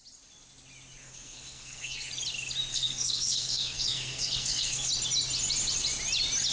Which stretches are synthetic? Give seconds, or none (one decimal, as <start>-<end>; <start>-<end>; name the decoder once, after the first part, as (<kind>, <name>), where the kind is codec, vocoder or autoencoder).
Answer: 1.0-2.1 (codec, SNAC); 2.7-4.9